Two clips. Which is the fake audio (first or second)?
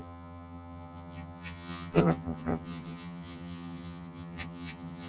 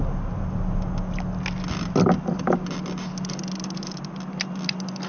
first